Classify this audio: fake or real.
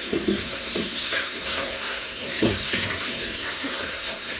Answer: fake